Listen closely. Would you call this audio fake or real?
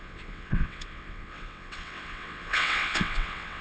fake